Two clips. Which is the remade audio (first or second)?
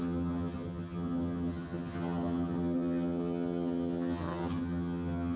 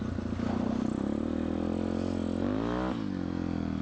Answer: first